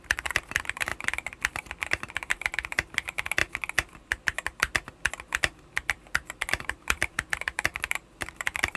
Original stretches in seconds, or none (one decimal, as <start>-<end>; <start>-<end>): 0.9-1.9; 3.4-6.6